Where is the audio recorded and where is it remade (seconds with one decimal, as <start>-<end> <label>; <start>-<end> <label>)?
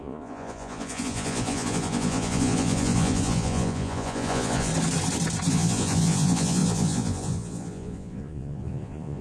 0.0-4.7 remade; 4.7-5.5 recorded; 5.5-9.2 remade